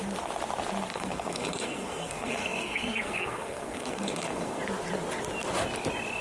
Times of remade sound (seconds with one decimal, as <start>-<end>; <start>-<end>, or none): 0.9-4.6